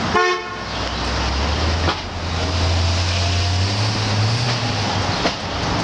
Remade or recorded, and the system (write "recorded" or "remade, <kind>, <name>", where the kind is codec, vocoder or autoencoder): recorded